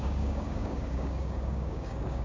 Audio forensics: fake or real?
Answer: fake